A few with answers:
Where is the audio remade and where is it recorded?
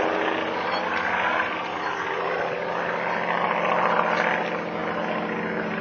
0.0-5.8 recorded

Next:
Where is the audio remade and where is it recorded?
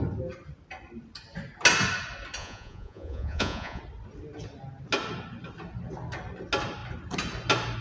0.0-2.4 recorded; 2.4-3.8 remade; 3.8-7.8 recorded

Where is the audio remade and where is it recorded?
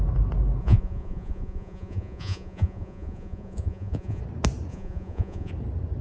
0.0-0.6 recorded; 0.6-4.2 remade; 4.2-4.7 recorded; 4.7-5.5 remade; 5.5-6.0 recorded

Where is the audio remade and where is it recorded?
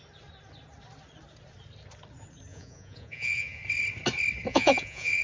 0.0-2.5 recorded; 2.5-3.6 remade; 3.6-4.5 recorded; 4.5-5.2 remade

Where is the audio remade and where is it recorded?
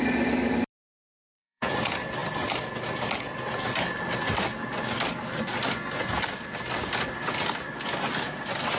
0.0-1.1 recorded; 1.1-1.7 remade; 1.7-8.8 recorded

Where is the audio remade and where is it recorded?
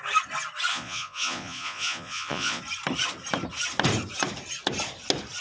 0.0-0.7 recorded; 0.7-2.6 remade; 2.6-5.4 recorded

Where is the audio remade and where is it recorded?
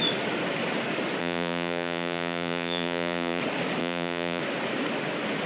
0.0-1.2 recorded; 1.2-3.4 remade; 3.4-3.8 recorded; 3.8-4.4 remade; 4.4-5.5 recorded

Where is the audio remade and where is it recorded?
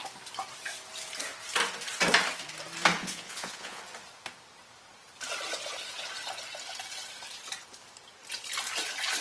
0.0-3.0 recorded; 3.0-3.8 remade; 3.8-9.2 recorded